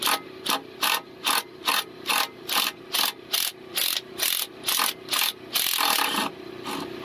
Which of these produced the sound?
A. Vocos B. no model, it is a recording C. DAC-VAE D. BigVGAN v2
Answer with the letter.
B